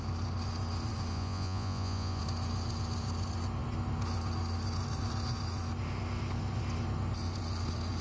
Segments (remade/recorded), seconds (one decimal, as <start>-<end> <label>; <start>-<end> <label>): 0.0-1.1 recorded; 1.1-2.2 remade; 2.2-8.0 recorded